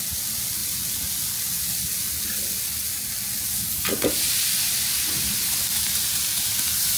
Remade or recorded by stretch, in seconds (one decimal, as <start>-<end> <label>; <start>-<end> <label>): 0.0-7.0 recorded